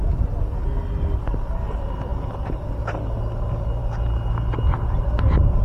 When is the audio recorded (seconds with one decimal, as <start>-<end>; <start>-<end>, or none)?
0.0-5.6